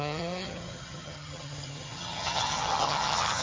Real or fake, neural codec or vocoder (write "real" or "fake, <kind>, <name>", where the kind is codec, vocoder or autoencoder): fake, vocoder, HiFi-GAN